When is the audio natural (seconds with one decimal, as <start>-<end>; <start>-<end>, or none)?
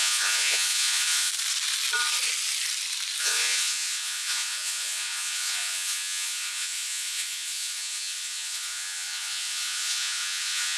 1.3-3.2